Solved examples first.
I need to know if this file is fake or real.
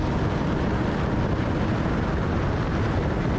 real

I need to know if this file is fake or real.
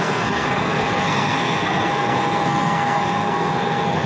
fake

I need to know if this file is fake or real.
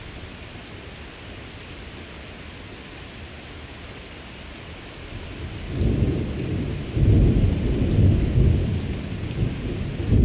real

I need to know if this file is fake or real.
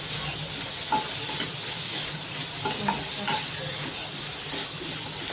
real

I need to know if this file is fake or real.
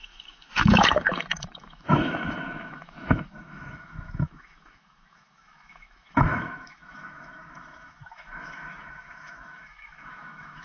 fake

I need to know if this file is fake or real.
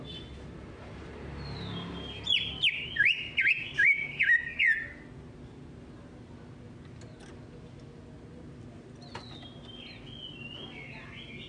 real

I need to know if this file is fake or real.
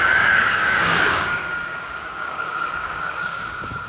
fake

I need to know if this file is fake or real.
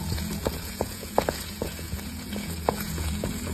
fake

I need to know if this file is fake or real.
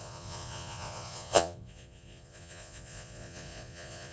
fake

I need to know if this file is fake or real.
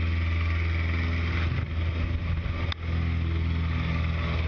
real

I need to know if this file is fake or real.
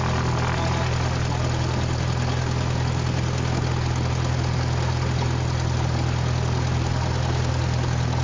real